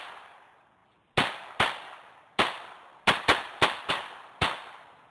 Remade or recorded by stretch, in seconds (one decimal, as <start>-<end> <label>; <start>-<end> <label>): 0.0-5.1 recorded

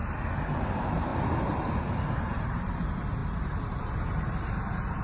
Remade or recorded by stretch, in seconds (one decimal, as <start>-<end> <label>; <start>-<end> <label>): 0.0-0.7 recorded; 0.7-1.1 remade; 1.1-2.1 recorded; 2.1-5.0 remade